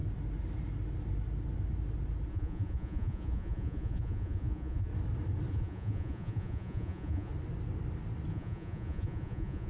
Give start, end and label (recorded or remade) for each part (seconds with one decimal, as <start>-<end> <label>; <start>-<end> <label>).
0.0-2.3 recorded; 2.3-4.9 remade; 4.9-5.5 recorded; 5.5-7.3 remade; 7.3-8.3 recorded; 8.3-9.7 remade